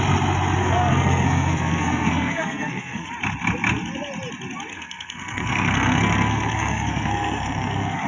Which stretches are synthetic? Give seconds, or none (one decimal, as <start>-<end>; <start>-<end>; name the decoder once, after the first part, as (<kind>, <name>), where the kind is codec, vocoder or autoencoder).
0.6-3.1 (codec, SNAC); 4.7-8.1